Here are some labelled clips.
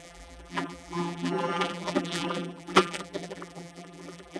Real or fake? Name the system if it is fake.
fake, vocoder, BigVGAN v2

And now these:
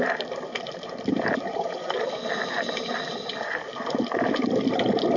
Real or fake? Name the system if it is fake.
fake, vocoder, BigVGAN v2